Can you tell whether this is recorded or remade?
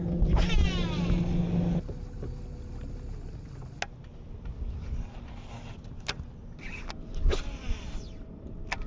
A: recorded